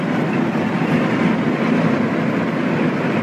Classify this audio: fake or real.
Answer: real